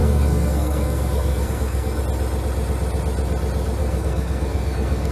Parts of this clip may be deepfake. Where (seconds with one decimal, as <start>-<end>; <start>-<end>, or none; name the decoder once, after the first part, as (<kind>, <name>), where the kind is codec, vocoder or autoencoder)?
0.0-2.0 (codec, SNAC); 3.8-5.1

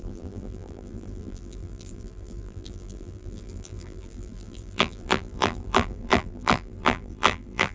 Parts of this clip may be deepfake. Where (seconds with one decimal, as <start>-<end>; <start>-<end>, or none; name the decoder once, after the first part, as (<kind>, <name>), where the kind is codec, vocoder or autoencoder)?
0.0-7.7 (vocoder, BigVGAN v2)

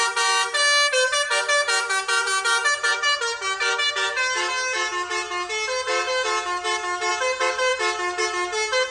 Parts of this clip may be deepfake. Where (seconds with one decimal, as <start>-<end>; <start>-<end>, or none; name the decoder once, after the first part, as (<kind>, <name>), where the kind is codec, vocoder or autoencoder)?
none

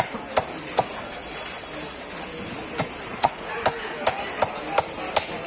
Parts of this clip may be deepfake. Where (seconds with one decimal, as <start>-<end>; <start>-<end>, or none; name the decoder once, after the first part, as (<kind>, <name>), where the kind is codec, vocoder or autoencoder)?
3.1-3.6 (vocoder, Vocos)